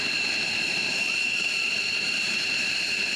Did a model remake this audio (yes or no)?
yes